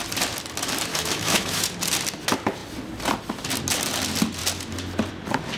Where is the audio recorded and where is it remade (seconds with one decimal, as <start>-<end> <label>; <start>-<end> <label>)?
0.0-0.9 recorded; 0.9-1.7 remade; 1.7-5.6 recorded

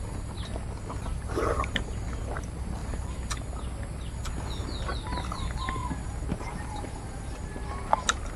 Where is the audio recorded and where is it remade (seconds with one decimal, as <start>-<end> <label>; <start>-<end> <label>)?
0.0-8.4 recorded

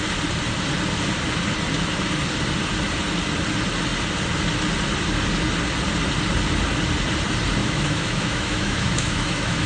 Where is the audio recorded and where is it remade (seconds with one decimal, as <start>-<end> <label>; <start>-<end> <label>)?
0.0-7.6 recorded; 7.6-9.7 remade